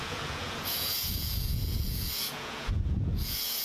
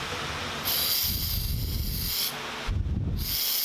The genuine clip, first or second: second